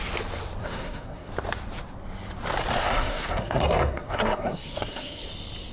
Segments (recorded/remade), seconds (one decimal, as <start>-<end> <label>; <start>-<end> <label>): 0.0-0.6 recorded; 0.6-1.3 remade; 1.3-2.8 recorded; 2.8-5.3 remade; 5.3-5.7 recorded